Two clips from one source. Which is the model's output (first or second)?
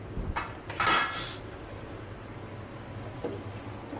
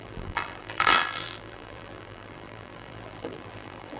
second